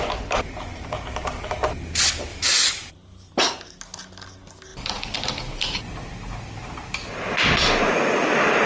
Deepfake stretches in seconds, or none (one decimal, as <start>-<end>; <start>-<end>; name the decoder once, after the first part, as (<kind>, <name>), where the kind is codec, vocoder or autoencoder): 2.3-2.9 (autoencoder, DAC-VAE)